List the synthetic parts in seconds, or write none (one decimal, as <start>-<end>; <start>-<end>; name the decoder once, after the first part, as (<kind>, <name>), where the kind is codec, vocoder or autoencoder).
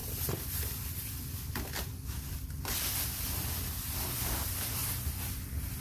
none